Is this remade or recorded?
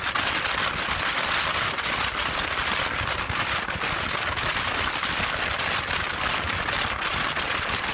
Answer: recorded